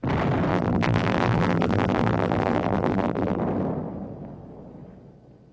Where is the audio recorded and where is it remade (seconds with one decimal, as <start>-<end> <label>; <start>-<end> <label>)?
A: 0.0-0.5 recorded; 0.5-3.4 remade; 3.4-5.5 recorded